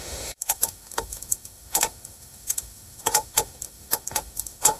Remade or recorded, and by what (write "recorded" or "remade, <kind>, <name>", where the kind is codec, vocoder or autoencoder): remade, autoencoder, DAC-VAE